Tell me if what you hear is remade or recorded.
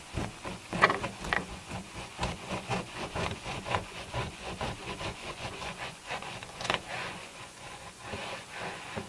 remade